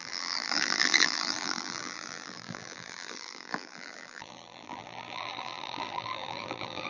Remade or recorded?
remade